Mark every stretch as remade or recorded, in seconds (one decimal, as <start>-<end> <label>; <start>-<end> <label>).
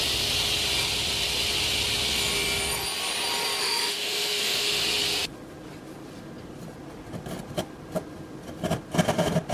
0.0-3.6 recorded; 3.6-4.8 remade; 4.8-9.5 recorded